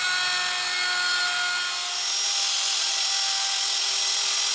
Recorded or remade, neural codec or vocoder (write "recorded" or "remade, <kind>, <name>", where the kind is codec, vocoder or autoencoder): recorded